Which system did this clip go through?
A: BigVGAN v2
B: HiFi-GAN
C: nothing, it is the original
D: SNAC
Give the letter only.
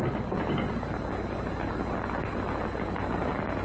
C